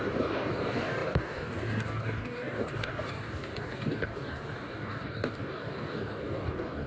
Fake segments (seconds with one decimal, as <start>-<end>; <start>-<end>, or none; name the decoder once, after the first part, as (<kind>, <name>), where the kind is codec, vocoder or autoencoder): 0.0-6.9 (codec, DAC)